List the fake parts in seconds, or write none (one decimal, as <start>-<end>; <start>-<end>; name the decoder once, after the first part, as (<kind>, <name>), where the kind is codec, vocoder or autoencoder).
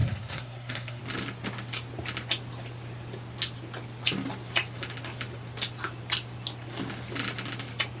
0.0-1.0 (codec, SNAC)